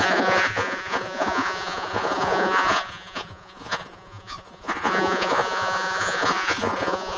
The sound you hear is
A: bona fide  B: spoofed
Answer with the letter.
B